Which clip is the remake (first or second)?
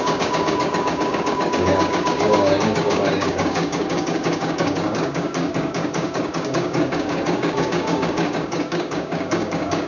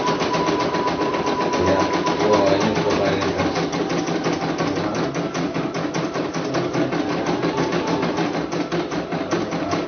first